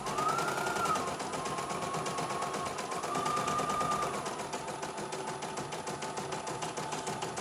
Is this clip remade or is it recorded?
recorded